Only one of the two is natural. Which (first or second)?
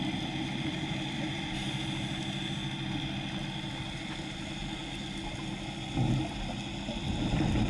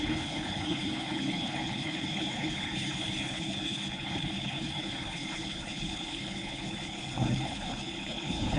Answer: first